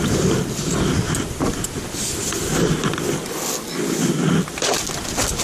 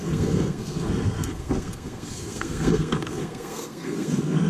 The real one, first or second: first